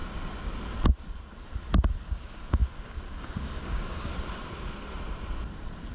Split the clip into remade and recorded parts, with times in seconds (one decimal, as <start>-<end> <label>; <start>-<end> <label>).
0.0-2.1 recorded; 2.1-4.1 remade; 4.1-5.9 recorded